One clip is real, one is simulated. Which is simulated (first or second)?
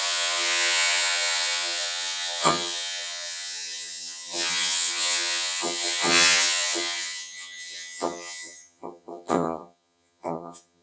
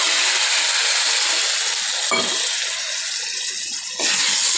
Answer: first